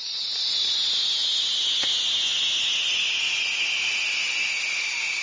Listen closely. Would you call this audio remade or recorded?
recorded